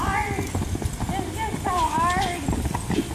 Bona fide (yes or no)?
yes